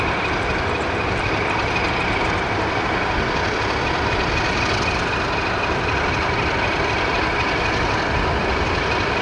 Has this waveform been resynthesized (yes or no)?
no